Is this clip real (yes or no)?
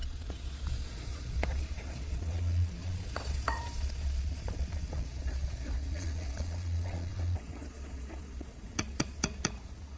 no